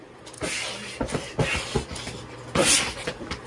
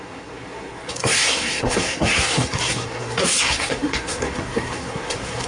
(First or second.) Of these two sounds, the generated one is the second